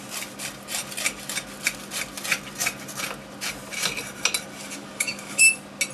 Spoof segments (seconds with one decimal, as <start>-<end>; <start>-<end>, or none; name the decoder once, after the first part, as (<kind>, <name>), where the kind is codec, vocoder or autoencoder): 4.6-5.4 (codec, DAC)